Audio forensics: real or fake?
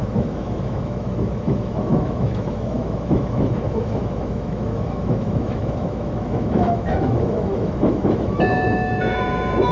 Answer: fake